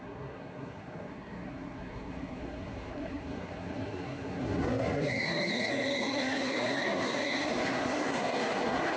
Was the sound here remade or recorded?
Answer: remade